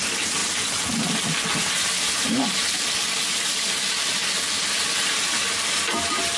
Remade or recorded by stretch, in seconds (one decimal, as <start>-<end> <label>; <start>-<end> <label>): 0.0-6.4 recorded